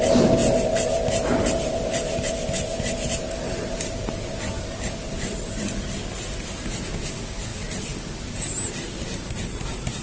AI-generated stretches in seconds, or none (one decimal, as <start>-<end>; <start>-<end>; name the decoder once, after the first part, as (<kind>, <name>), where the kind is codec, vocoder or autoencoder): none